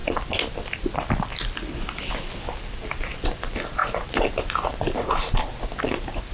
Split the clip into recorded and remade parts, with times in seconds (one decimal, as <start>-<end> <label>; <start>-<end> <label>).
0.0-6.3 recorded